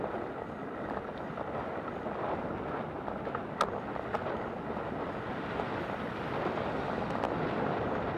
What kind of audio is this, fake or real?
real